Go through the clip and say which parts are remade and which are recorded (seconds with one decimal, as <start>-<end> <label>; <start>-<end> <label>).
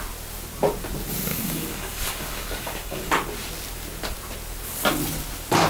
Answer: 0.0-1.3 recorded; 1.3-3.1 remade; 3.1-5.7 recorded